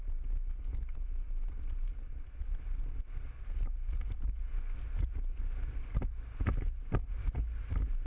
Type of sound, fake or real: real